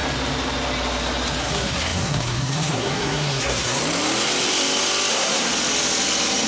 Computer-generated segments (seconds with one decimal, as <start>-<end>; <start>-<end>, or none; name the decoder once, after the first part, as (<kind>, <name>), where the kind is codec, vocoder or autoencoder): 1.4-3.8 (codec, SNAC); 5.1-5.5